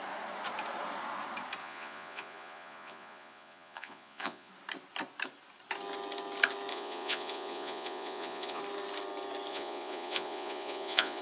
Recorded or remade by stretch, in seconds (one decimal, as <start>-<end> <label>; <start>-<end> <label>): 0.0-1.6 recorded; 1.6-4.5 remade; 4.5-6.7 recorded; 6.7-8.6 remade; 8.6-9.5 recorded; 9.5-11.2 remade